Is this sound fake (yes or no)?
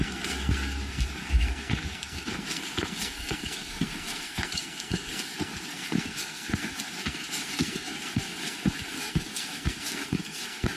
yes